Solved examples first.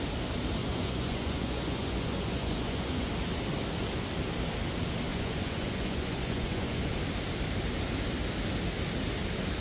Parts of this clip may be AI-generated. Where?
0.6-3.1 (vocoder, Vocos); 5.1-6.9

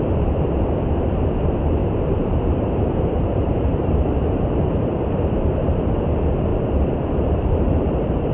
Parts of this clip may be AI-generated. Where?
0.0-6.5 (vocoder, BigVGAN v2); 7.1-8.3

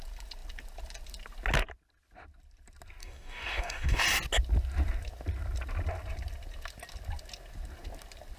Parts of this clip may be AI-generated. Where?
3.0-4.0 (codec, DAC)

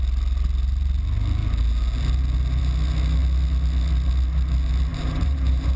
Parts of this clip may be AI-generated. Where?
4.9-5.8 (vocoder, BigVGAN v2)

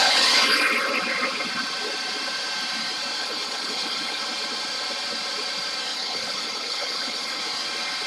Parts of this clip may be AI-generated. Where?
0.0-0.6 (codec, HILCodec); 3.2-4.2; 5.9-7.4